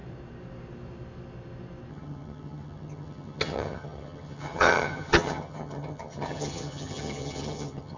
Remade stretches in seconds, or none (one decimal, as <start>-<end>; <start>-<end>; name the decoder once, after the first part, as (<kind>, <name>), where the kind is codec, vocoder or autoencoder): 1.9-8.0 (vocoder, HiFi-GAN)